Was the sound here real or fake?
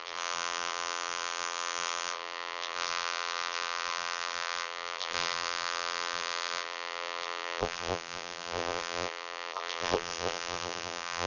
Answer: fake